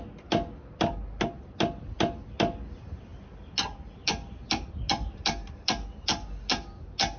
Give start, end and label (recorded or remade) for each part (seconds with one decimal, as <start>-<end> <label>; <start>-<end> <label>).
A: 0.0-7.2 recorded